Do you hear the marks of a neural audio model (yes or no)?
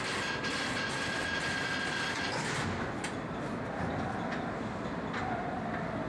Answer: no